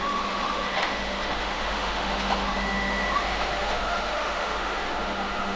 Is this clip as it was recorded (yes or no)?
no